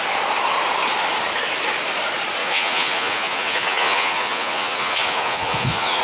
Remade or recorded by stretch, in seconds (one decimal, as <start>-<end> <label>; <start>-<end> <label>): 0.0-2.4 recorded; 2.4-6.0 remade

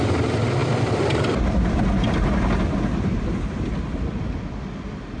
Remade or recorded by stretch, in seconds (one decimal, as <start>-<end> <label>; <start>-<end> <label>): 0.0-5.2 recorded

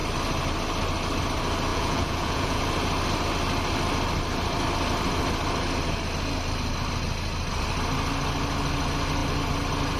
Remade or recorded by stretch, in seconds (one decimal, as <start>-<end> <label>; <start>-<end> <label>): 0.0-1.7 recorded; 1.7-2.6 remade; 2.6-10.0 recorded

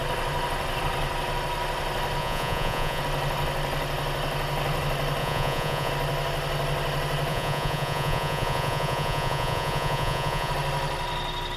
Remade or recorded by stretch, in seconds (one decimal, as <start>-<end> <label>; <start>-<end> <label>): 0.0-2.2 recorded; 2.2-3.0 remade; 3.0-5.2 recorded; 5.2-5.9 remade; 5.9-7.3 recorded; 7.3-10.5 remade; 10.5-11.6 recorded